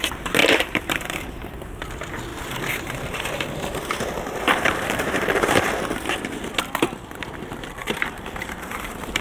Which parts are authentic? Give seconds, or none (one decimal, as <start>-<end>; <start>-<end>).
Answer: 0.0-0.4; 1.3-2.3; 5.8-7.8